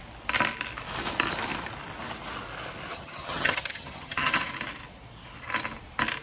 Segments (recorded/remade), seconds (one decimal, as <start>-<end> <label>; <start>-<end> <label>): 0.0-2.9 recorded; 2.9-4.5 remade; 4.5-6.2 recorded